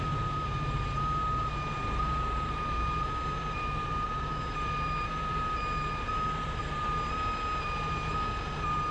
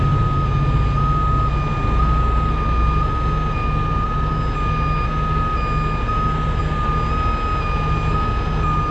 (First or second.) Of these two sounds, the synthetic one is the first